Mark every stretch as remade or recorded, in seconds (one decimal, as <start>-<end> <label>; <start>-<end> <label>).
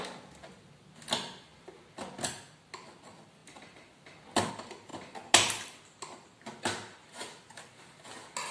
0.0-8.5 recorded